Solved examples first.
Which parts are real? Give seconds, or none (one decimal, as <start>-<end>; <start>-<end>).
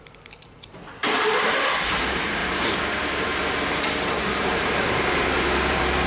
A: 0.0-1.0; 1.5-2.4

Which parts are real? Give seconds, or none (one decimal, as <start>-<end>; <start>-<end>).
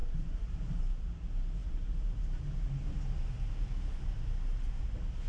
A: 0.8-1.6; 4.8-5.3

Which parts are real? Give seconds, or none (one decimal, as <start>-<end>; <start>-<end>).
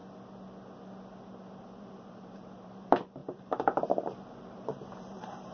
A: 0.0-1.5; 3.2-4.3